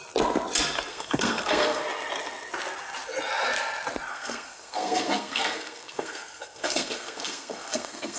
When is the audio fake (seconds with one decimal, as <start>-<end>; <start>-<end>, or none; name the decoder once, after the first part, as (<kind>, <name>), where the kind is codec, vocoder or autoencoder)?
0.9-1.8 (codec, SNAC); 4.1-8.2